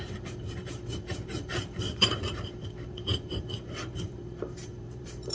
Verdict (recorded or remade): remade